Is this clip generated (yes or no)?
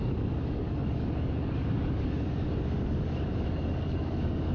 yes